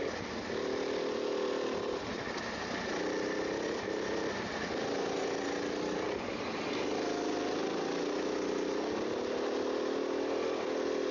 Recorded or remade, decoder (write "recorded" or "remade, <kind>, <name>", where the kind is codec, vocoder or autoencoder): recorded